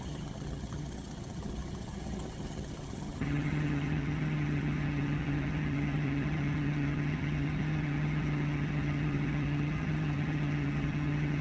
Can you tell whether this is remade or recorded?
remade